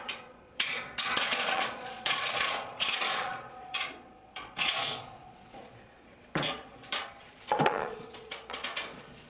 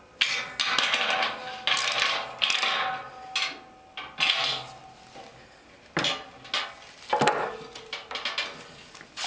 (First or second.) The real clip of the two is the second